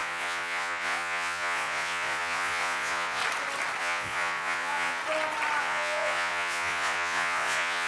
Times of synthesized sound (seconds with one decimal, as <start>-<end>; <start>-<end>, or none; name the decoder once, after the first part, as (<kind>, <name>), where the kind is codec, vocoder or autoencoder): 0.0-3.2 (vocoder, Vocos); 3.8-5.0; 5.6-7.9